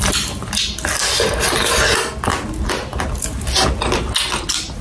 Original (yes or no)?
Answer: yes